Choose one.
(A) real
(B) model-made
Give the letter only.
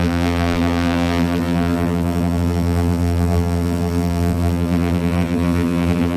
B